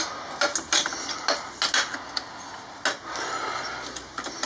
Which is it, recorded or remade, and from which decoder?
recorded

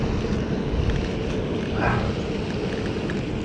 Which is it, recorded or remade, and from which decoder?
recorded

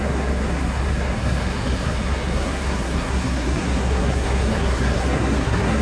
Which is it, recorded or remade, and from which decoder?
remade, codec, SNAC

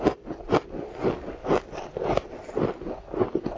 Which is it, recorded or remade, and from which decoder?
recorded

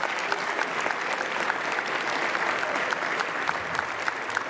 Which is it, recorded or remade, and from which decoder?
recorded